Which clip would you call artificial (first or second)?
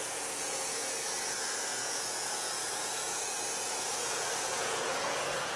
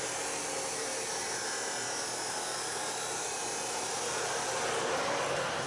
first